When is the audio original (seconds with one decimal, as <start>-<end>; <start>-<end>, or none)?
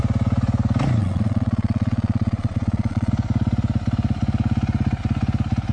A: 0.0-1.0; 3.1-5.7